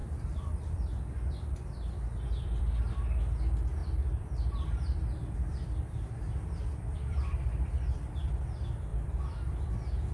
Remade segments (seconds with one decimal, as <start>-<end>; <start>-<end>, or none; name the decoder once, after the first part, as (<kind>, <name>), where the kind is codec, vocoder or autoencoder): 0.0-2.6 (vocoder, BigVGAN v2); 3.8-8.3; 8.9-9.7